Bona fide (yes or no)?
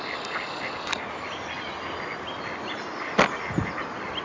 yes